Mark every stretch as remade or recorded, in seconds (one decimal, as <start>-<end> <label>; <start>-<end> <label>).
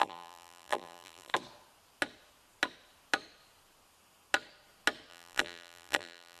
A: 0.0-1.3 remade; 1.3-5.1 recorded; 5.1-6.4 remade